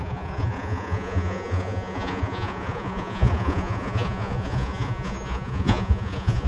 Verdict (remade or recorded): remade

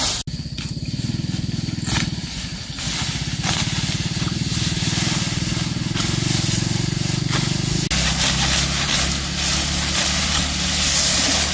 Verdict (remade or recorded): recorded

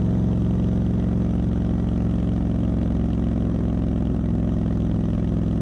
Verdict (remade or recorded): recorded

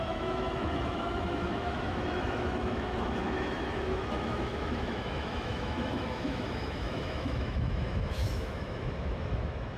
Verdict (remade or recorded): remade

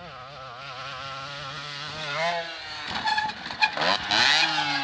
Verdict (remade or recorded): recorded